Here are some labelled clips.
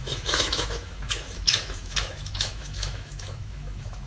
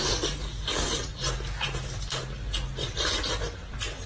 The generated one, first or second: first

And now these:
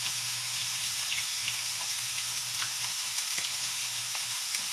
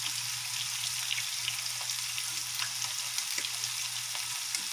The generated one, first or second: first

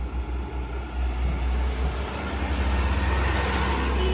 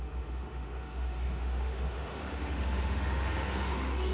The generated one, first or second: second